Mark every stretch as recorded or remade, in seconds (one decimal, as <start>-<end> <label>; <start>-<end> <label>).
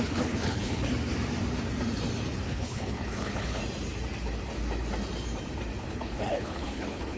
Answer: 0.0-0.9 remade; 0.9-2.5 recorded; 2.5-3.6 remade; 3.6-5.8 recorded; 5.8-7.2 remade